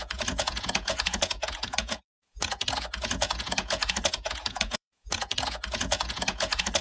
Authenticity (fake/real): fake